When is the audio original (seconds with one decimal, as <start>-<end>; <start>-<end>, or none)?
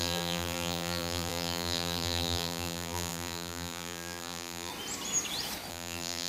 4.7-5.7